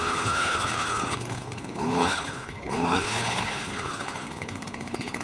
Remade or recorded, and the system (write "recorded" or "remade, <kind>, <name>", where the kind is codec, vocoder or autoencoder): remade, codec, HILCodec